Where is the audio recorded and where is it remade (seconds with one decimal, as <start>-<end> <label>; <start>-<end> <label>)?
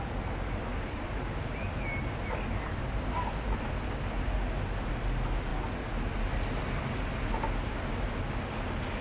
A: 0.0-9.0 recorded